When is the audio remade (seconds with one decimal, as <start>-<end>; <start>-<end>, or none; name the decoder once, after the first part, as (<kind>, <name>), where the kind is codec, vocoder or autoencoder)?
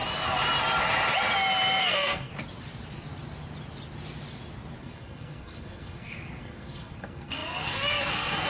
1.8-2.3 (codec, SNAC); 4.8-8.5